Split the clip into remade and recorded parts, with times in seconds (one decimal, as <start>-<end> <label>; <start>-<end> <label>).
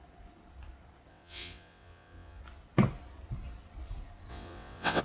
0.0-1.1 recorded; 1.1-2.4 remade; 2.4-4.3 recorded; 4.3-5.0 remade